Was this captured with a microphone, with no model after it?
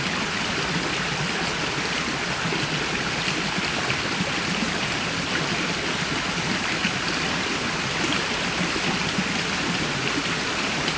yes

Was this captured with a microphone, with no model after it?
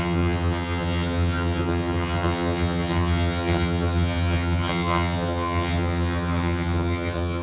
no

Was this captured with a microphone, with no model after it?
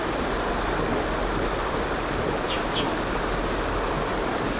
yes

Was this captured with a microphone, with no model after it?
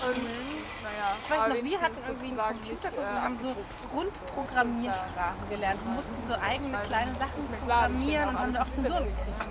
yes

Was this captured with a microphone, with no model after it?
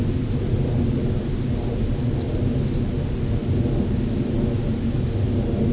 yes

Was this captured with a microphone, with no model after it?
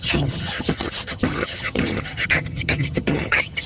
no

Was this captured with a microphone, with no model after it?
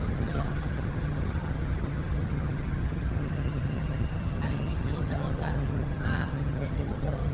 no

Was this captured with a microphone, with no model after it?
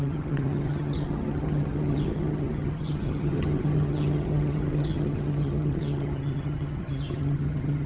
no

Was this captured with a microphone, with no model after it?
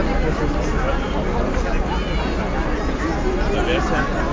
yes